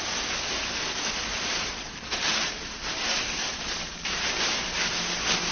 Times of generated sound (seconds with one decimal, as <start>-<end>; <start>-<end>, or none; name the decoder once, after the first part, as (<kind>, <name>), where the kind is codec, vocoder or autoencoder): 1.3-4.6 (vocoder, BigVGAN v2)

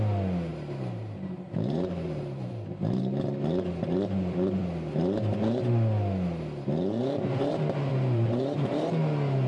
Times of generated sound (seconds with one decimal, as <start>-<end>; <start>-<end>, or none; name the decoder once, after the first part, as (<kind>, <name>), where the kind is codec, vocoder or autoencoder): 0.5-3.0 (vocoder, BigVGAN v2); 7.9-9.0

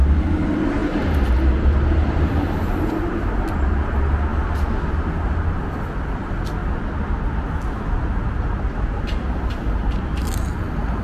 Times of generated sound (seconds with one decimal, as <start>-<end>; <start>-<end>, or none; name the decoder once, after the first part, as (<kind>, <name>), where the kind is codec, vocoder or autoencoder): 0.8-3.7 (vocoder, BigVGAN v2)

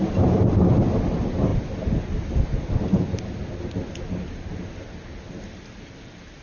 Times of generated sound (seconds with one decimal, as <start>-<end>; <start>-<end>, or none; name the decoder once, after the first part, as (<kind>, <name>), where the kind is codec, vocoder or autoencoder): none

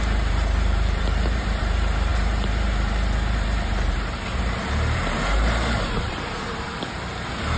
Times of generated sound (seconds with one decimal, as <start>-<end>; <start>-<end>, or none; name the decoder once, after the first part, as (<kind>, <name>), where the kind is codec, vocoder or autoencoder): 0.0-7.6 (vocoder, BigVGAN v2)

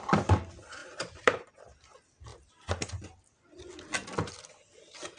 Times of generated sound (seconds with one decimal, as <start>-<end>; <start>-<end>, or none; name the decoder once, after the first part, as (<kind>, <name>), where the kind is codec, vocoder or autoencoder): 0.8-1.5 (vocoder, BigVGAN v2)

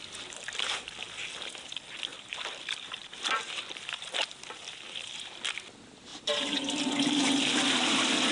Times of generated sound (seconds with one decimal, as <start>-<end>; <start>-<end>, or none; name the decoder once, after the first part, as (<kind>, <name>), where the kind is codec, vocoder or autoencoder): 2.1-4.4 (vocoder, BigVGAN v2); 6.1-7.3